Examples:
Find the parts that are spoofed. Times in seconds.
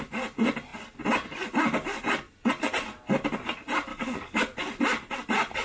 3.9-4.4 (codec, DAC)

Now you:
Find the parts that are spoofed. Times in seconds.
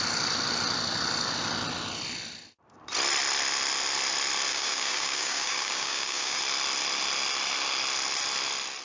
4.5-6.4 (codec, DAC)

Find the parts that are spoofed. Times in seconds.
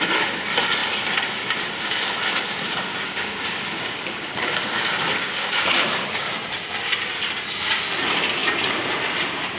2.9-6.3 (codec, DAC)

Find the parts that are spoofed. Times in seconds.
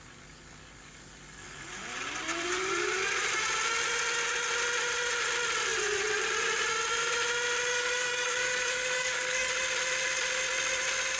7.7-9.5 (codec, DAC)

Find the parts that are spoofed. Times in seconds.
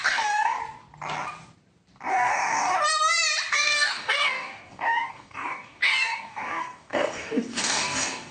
0.0-0.6 (codec, DAC); 2.1-2.7; 3.5-8.3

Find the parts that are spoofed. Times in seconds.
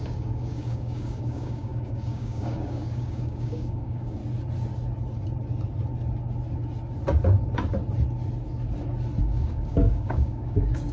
0.0-4.2 (codec, DAC); 9.2-10.9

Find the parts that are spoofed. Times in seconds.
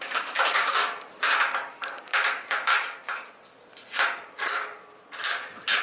0.0-0.8 (codec, DAC); 2.0-2.7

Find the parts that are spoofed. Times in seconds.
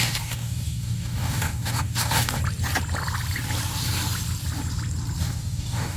0.0-2.4 (codec, DAC); 5.2-6.0